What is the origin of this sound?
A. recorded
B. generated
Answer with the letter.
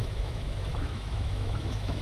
B